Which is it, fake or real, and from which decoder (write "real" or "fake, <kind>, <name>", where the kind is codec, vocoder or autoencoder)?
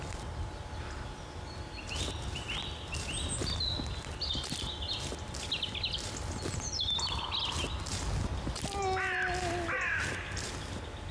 real